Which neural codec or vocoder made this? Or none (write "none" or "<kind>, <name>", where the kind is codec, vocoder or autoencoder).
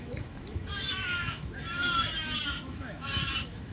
autoencoder, DAC-VAE